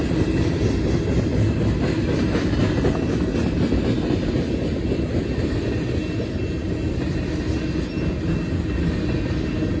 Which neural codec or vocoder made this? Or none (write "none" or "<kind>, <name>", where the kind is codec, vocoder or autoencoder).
none